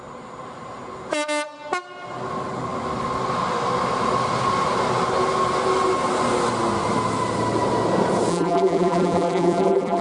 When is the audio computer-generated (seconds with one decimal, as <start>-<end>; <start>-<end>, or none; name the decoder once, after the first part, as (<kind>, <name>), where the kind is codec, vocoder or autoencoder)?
8.3-10.0 (vocoder, BigVGAN v2)